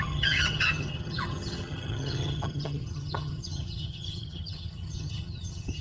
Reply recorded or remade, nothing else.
remade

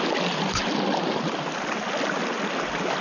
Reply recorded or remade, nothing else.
recorded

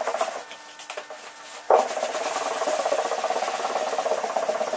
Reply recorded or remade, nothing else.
recorded